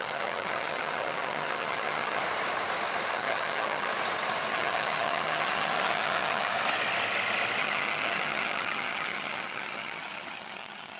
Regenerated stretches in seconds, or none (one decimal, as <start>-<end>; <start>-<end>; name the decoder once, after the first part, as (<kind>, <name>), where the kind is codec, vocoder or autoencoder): 0.0-2.2 (vocoder, HiFi-GAN); 3.1-3.9; 4.5-6.5; 7.6-11.0